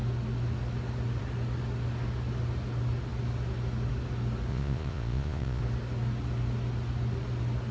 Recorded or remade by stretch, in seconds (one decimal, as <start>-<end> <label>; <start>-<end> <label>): 0.0-4.5 recorded; 4.5-5.6 remade; 5.6-7.7 recorded

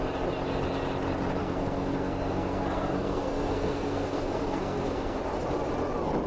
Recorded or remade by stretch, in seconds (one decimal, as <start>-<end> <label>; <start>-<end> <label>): 0.0-1.4 recorded; 1.4-5.2 remade; 5.2-6.3 recorded